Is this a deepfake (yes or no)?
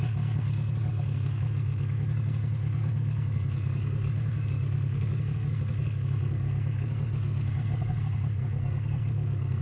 yes